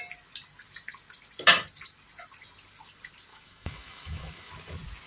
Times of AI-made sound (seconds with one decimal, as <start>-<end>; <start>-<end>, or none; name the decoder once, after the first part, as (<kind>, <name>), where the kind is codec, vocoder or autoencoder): 3.3-4.5 (autoencoder, DAC-VAE)